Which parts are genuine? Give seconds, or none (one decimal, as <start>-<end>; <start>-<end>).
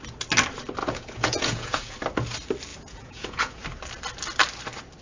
0.0-0.8; 1.9-2.7; 3.6-5.0